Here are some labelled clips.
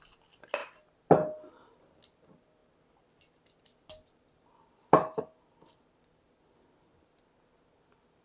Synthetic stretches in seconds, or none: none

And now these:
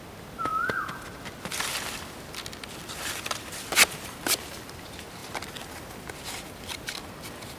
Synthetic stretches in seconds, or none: none

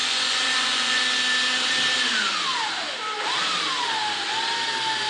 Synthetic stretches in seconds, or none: 0.0-1.0 (vocoder, Vocos)

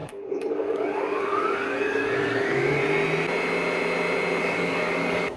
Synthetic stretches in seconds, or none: 0.0-2.8 (codec, DAC); 4.4-5.4

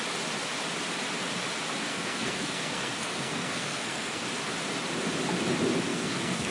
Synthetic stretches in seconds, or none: 1.9-4.3 (codec, SNAC); 5.9-6.5

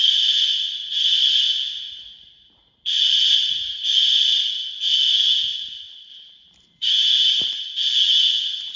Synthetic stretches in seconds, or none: 0.0-3.9 (vocoder, BigVGAN v2); 6.1-6.9